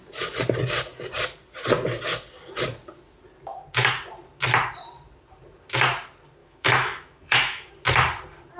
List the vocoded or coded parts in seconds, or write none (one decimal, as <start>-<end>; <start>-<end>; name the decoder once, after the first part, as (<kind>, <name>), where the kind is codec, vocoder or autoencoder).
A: 6.4-7.7 (autoencoder, DAC-VAE)